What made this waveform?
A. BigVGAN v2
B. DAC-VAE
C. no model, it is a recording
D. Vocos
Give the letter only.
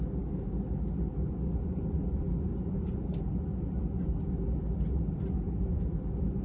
C